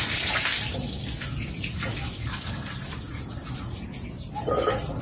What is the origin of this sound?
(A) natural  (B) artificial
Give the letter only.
A